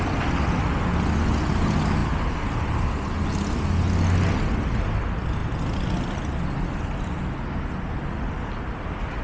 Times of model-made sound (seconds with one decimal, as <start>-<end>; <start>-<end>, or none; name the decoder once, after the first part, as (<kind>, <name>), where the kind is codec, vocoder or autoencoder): none